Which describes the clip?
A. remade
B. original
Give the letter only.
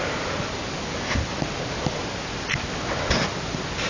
B